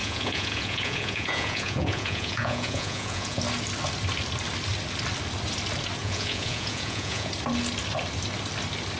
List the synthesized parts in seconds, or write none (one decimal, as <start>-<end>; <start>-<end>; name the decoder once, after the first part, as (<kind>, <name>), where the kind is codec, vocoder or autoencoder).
0.0-3.4 (vocoder, Vocos); 6.0-7.3